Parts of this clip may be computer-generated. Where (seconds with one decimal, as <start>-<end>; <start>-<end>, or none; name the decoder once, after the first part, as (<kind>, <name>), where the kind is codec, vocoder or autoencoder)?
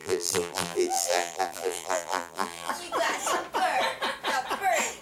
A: 0.0-2.7 (vocoder, BigVGAN v2)